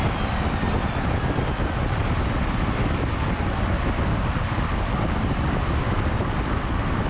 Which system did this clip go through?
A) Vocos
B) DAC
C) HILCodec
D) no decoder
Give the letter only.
D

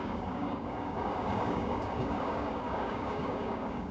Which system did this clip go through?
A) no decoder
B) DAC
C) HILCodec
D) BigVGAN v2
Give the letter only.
B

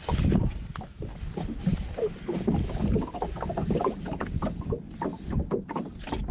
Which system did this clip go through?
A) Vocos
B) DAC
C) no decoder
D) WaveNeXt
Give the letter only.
C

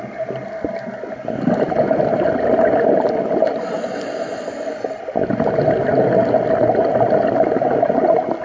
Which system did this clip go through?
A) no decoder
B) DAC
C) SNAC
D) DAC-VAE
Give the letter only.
A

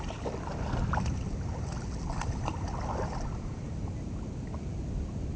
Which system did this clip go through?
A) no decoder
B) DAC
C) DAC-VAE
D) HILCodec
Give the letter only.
A